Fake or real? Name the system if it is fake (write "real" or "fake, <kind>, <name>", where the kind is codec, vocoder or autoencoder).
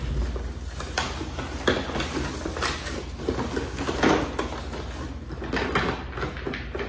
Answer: real